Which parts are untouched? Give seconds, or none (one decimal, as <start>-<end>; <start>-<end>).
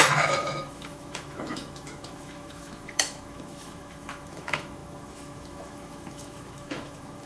none